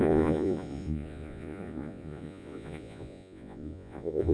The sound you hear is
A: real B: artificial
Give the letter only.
B